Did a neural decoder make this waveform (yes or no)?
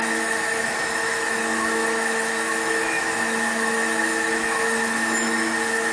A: yes